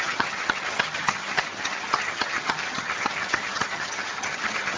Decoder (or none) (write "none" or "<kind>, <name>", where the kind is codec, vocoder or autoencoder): vocoder, HiFi-GAN